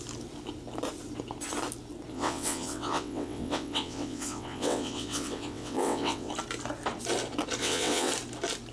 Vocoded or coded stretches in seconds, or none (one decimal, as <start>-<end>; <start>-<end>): 2.1-6.3; 7.6-8.1

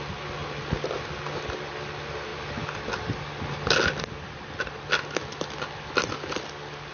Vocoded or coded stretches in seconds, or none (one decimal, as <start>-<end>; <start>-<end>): none

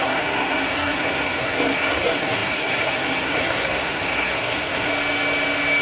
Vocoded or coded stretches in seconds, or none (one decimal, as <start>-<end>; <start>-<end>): 0.0-4.9

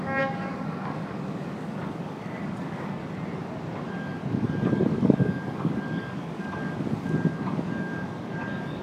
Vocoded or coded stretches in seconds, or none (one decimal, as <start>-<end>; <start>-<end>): 0.0-3.0; 4.0-8.8